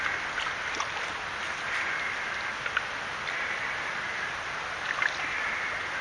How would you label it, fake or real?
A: real